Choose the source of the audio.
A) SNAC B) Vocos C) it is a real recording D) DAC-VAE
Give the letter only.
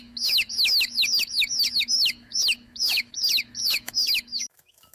D